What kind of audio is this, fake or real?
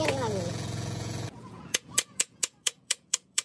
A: fake